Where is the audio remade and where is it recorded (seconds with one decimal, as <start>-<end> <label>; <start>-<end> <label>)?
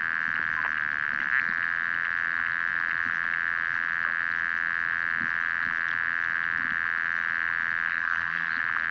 0.0-7.9 recorded; 7.9-8.5 remade; 8.5-8.9 recorded